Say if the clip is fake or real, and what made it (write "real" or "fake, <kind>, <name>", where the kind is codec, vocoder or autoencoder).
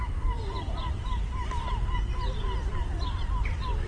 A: real